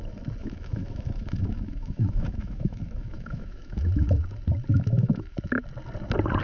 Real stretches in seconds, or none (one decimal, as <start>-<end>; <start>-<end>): 0.0-0.4; 4.2-4.7; 5.4-6.4